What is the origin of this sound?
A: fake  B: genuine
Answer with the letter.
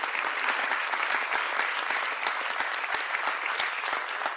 B